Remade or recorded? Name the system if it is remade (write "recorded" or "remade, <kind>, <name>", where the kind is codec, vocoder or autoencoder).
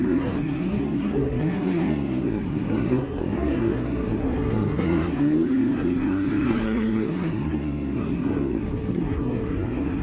remade, codec, SNAC